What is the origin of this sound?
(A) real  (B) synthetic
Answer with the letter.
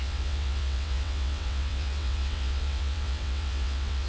B